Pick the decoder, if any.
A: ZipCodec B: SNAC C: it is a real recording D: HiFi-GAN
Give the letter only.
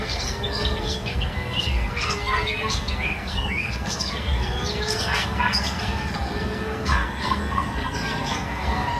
B